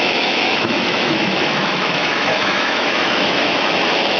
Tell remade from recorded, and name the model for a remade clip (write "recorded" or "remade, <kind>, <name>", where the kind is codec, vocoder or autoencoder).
remade, autoencoder, DAC-VAE